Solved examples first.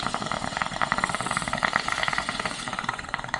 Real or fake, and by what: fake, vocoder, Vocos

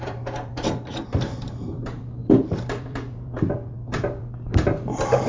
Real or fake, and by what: fake, vocoder, BigVGAN v2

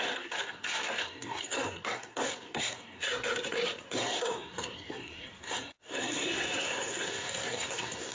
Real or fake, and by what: fake, codec, SNAC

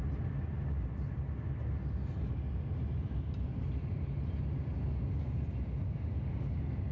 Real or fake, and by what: real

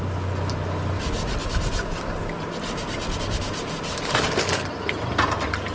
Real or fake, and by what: real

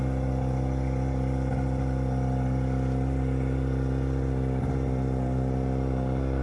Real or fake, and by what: real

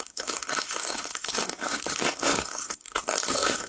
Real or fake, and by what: fake, codec, SNAC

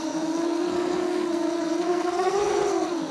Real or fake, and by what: fake, codec, SNAC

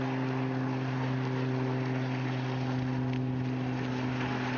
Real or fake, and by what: real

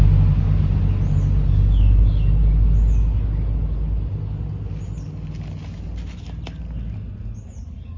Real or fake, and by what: real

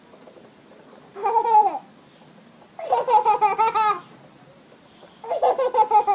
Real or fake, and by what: real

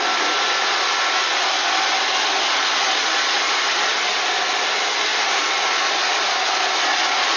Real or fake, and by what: real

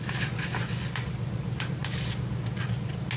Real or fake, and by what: real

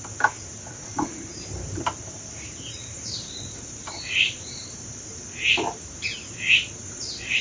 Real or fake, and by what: fake, vocoder, BigVGAN v2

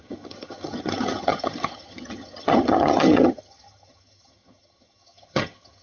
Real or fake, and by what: fake, vocoder, HiFi-GAN